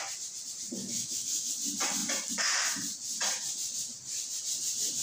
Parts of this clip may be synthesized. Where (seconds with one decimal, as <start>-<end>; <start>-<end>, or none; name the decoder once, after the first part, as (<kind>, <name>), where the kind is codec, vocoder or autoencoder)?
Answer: 0.8-1.5 (autoencoder, DAC-VAE)